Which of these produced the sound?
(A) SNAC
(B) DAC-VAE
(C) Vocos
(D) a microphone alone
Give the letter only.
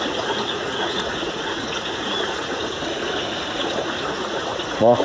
C